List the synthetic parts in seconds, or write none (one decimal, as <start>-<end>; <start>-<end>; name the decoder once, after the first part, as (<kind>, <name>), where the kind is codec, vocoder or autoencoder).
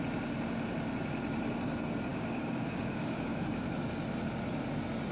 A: 2.1-3.5 (codec, DAC)